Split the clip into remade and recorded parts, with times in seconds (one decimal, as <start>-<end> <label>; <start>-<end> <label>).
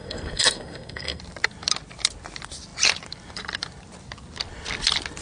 0.0-1.2 remade; 1.2-5.2 recorded